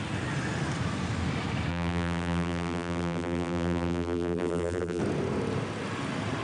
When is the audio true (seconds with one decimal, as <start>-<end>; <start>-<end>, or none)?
0.0-1.7; 5.0-6.4